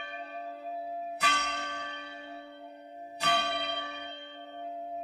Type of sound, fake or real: fake